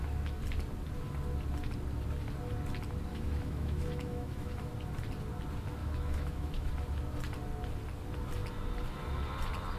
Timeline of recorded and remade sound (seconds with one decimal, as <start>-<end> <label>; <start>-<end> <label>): 0.0-3.1 recorded; 3.1-4.7 remade; 4.7-5.8 recorded; 5.8-6.7 remade; 6.7-9.8 recorded